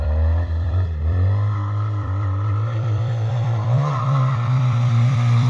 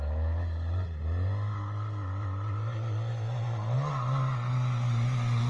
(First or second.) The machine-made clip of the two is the first